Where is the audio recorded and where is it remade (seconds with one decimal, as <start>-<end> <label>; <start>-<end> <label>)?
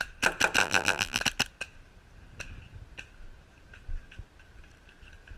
0.0-0.6 recorded; 0.6-1.2 remade; 1.2-5.4 recorded